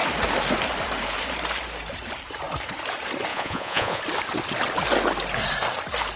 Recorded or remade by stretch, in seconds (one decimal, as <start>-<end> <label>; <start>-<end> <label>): 0.0-3.3 recorded; 3.3-4.0 remade; 4.0-6.2 recorded